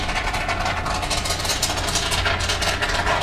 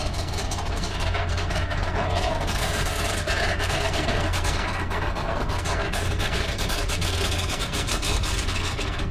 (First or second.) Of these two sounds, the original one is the first